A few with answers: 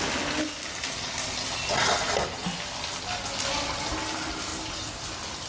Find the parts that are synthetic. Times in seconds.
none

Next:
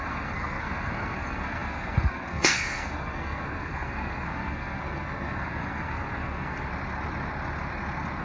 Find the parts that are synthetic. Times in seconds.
0.0-6.7

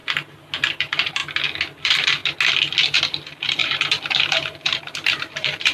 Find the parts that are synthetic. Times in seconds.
0.7-1.2; 1.8-2.2; 3.0-5.7